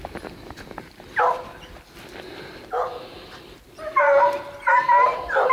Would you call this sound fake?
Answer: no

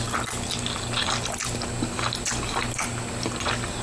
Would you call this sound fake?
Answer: no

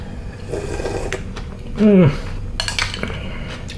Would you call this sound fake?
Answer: no